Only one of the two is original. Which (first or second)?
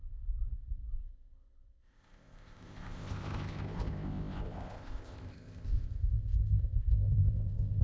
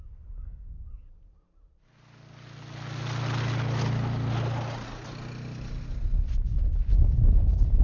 second